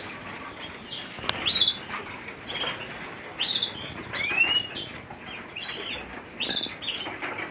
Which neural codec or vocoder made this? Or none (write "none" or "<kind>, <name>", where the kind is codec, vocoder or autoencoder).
none